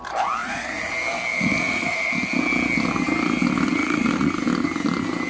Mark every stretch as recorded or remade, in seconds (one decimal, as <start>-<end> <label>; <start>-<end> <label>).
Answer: 0.0-0.4 recorded; 0.4-0.9 remade; 0.9-1.3 recorded; 1.3-2.1 remade; 2.1-3.8 recorded; 3.8-4.3 remade; 4.3-5.3 recorded